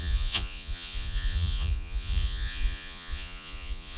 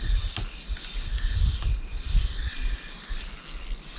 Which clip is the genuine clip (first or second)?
second